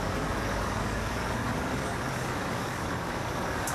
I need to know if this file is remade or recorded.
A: remade